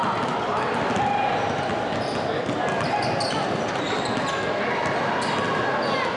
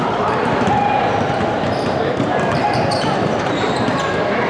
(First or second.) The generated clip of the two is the second